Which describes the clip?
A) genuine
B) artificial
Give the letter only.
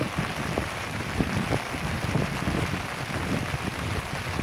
B